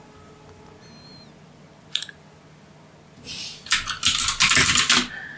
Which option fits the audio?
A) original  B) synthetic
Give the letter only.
A